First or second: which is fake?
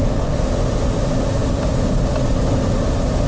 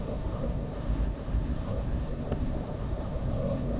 second